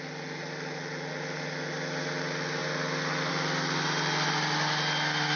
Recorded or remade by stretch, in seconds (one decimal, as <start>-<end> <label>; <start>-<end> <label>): 0.0-5.4 recorded